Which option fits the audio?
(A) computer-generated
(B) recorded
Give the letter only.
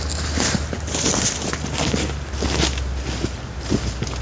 B